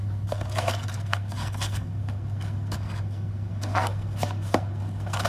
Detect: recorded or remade remade